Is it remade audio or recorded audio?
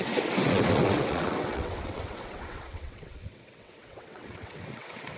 remade